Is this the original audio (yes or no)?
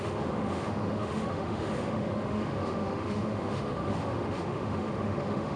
no